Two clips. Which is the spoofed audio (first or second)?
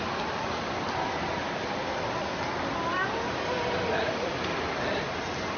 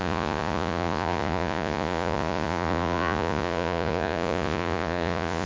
second